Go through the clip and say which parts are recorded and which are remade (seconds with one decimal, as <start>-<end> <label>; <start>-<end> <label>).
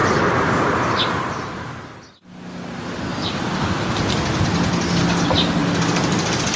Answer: 0.0-1.8 remade; 1.8-3.1 recorded; 3.1-3.7 remade; 3.7-5.6 recorded; 5.6-6.6 remade